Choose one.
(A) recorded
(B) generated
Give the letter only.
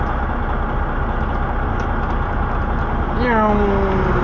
A